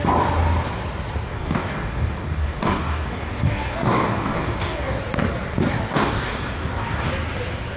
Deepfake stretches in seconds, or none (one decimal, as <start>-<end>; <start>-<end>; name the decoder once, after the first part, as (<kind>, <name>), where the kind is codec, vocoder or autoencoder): 1.3-5.0 (codec, DAC); 5.9-7.1